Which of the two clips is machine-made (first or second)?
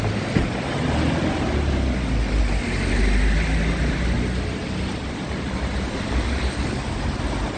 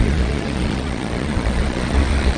second